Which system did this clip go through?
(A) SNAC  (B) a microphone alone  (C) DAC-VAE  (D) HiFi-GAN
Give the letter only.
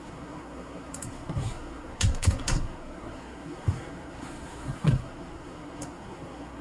A